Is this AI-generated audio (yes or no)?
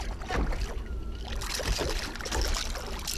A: no